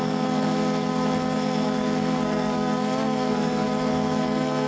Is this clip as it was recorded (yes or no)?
no